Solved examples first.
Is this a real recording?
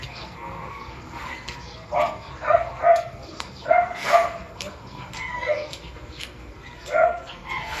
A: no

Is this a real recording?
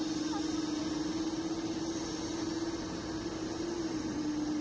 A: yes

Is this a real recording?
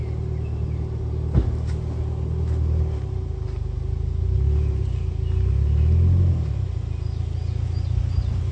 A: yes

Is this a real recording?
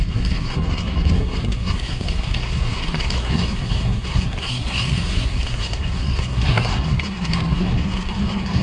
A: no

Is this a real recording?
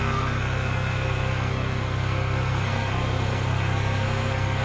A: no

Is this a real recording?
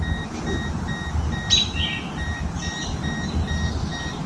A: yes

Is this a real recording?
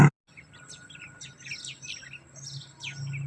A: yes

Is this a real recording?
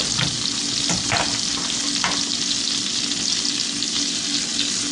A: yes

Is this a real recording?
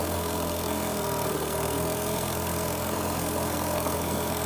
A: no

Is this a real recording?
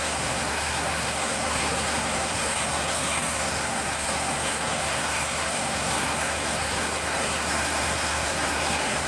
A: no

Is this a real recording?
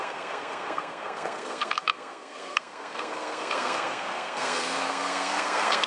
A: no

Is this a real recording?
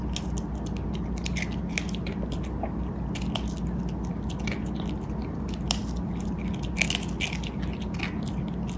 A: yes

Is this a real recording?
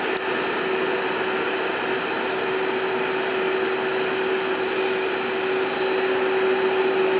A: yes